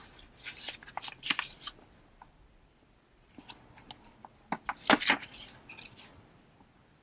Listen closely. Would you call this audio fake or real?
real